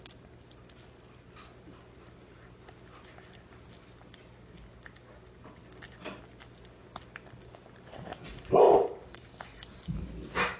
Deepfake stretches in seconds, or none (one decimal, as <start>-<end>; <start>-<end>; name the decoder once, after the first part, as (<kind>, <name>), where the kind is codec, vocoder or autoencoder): none